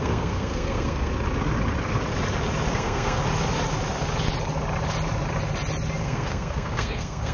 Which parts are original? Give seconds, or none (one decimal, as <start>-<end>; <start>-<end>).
1.1-2.7; 3.2-6.0